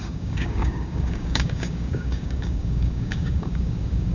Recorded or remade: remade